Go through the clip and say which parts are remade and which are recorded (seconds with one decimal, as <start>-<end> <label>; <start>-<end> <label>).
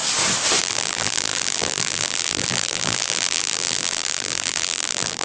0.0-0.6 recorded; 0.6-5.2 remade